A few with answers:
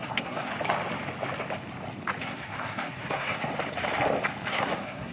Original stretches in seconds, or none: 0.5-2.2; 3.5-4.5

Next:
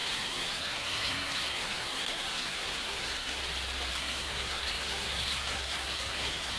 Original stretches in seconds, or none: 3.4-3.9

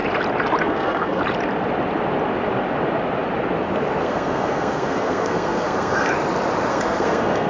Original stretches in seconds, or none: 0.0-0.6; 1.2-4.0; 6.1-6.7

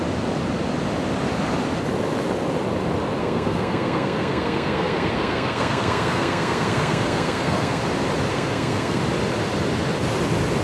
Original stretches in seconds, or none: 0.0-3.2; 7.8-8.3; 9.0-10.6

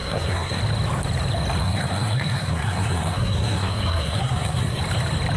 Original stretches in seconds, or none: 0.6-1.6; 4.8-5.4

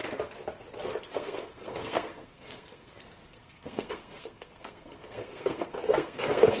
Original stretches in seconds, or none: 0.0-1.1

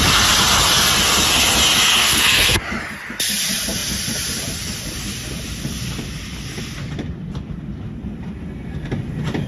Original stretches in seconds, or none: 0.0-2.0; 2.6-9.5

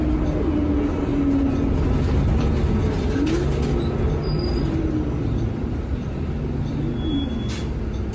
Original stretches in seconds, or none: 0.0-8.1